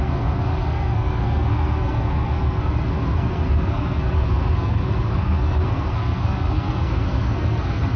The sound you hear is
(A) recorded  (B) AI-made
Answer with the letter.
B